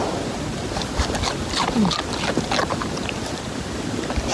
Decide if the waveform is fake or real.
real